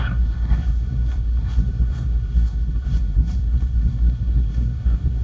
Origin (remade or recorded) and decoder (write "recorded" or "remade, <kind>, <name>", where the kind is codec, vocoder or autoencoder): remade, codec, SNAC